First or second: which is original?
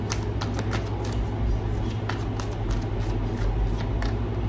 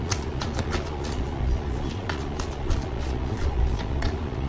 first